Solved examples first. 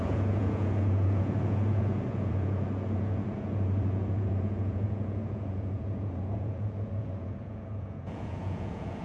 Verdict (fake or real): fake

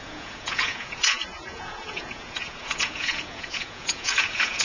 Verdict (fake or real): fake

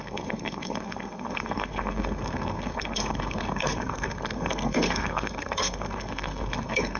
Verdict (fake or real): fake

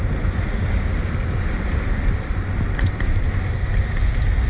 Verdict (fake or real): real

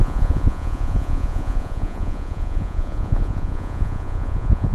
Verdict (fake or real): fake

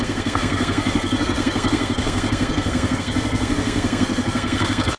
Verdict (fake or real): fake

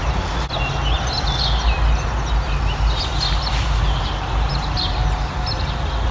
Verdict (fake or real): real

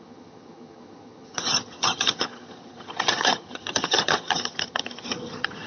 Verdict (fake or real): fake